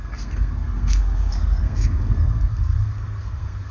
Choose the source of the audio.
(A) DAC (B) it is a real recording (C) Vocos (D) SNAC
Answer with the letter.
D